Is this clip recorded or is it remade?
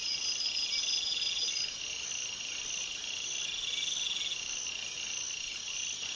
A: recorded